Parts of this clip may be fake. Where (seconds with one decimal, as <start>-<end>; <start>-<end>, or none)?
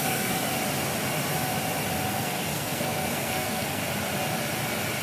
0.0-0.5; 2.1-3.8